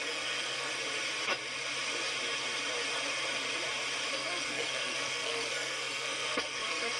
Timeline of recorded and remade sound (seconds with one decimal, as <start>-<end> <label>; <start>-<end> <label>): 0.0-0.7 remade; 0.7-4.1 recorded; 4.1-7.0 remade